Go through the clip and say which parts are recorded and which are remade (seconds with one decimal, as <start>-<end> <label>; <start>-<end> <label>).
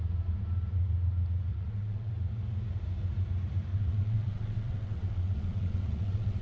0.0-1.5 recorded; 1.5-2.1 remade; 2.1-3.7 recorded; 3.7-6.4 remade